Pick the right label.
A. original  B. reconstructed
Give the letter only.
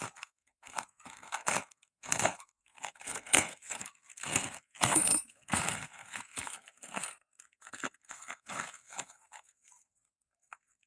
B